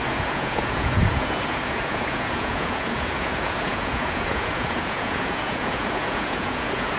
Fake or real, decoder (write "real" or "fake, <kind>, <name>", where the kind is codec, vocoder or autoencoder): fake, vocoder, Vocos